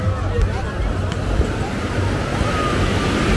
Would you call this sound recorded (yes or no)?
yes